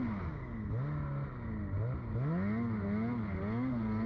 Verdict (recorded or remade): recorded